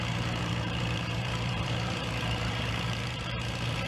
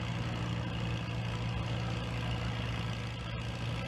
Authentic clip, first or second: second